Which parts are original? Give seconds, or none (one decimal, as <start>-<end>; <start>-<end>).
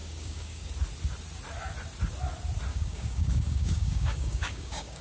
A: 0.7-2.7